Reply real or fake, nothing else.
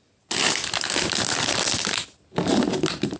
real